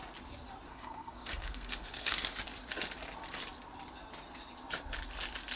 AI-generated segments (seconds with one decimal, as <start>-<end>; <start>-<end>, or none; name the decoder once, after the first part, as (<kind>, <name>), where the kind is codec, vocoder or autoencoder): 0.7-2.2 (codec, SNAC)